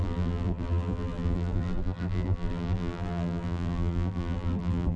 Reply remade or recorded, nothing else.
remade